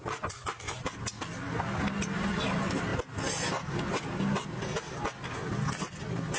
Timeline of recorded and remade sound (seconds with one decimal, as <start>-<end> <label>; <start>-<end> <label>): 0.0-6.4 recorded